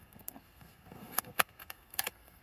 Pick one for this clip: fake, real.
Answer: fake